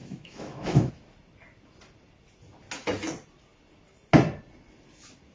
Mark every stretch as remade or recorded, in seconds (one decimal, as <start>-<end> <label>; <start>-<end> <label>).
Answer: 0.0-0.9 remade; 0.9-5.3 recorded